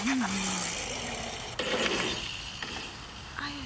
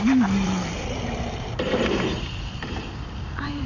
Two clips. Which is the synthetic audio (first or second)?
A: second